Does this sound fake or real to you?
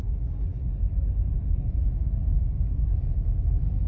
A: real